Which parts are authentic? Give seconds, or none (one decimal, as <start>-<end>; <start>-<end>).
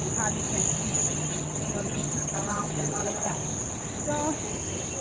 0.0-0.9; 3.3-5.0